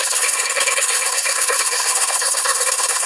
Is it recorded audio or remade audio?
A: remade